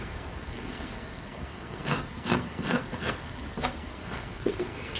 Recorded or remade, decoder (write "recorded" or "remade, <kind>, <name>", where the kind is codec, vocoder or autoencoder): remade, codec, SNAC